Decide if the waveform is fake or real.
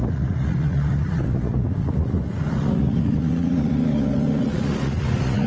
fake